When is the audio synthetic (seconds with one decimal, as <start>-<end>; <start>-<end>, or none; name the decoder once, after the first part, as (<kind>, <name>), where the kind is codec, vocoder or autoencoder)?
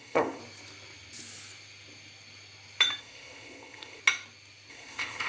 0.0-0.4 (codec, ZipCodec); 3.0-4.0; 4.7-5.3